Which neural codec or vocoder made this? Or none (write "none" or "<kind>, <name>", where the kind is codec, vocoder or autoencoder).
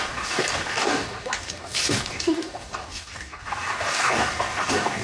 codec, DAC